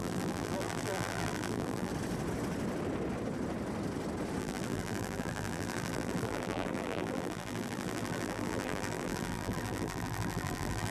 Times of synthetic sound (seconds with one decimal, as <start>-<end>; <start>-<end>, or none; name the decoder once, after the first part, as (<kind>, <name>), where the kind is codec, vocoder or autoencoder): 0.0-1.9 (vocoder, BigVGAN v2); 4.4-10.9